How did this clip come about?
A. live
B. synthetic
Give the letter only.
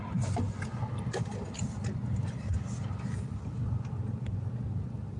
A